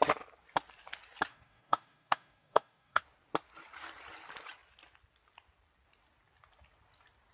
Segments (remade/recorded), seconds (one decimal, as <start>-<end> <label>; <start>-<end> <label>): 0.0-1.3 recorded; 1.3-3.0 remade; 3.0-7.3 recorded